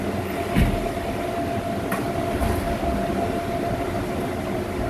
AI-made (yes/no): no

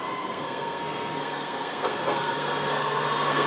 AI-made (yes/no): yes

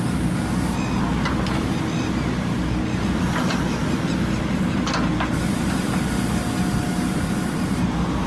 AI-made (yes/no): no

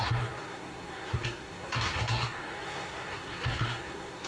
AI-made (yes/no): yes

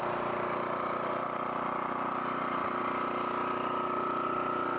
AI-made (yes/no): no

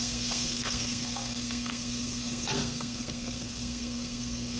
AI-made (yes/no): yes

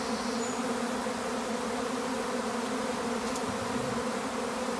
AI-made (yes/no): no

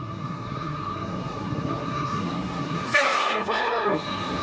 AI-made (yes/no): yes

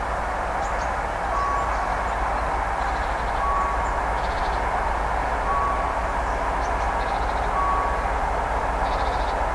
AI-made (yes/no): no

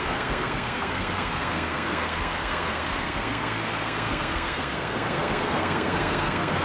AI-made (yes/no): yes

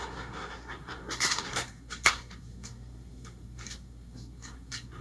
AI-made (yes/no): yes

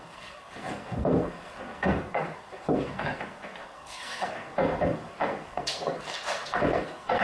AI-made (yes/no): yes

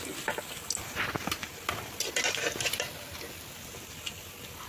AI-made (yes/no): no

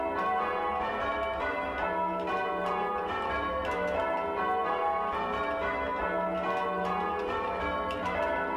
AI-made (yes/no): no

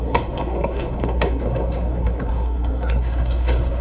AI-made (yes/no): yes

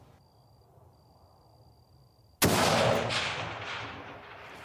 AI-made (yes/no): no